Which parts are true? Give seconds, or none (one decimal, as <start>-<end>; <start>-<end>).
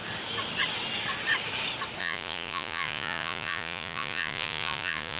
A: 0.0-2.0